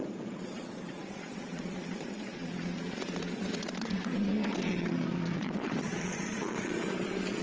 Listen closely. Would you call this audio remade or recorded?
remade